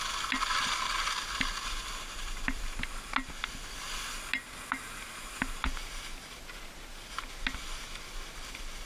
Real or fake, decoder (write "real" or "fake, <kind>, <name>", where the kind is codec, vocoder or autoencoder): real